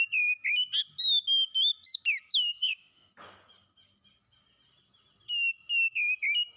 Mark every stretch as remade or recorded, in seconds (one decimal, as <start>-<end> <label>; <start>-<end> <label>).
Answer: 0.0-2.5 recorded; 2.5-3.1 remade; 3.1-6.6 recorded